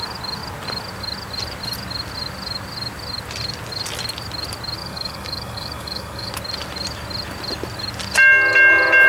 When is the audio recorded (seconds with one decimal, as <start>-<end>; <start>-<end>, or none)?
0.0-4.8; 6.3-9.1